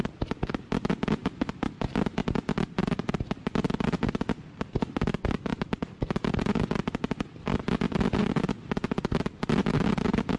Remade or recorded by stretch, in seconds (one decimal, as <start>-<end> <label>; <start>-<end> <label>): 0.0-2.2 recorded; 2.2-3.0 remade; 3.0-5.5 recorded; 5.5-6.3 remade; 6.3-10.4 recorded